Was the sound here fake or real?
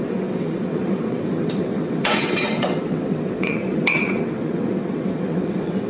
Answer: fake